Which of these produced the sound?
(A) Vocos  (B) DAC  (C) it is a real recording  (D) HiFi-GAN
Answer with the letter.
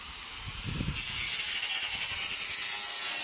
C